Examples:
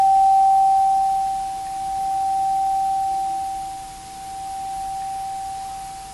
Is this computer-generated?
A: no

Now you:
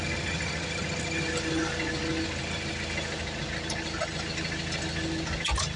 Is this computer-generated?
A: no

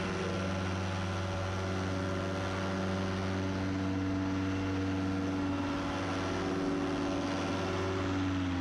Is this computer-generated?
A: no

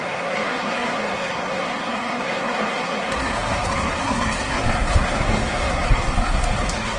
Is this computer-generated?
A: yes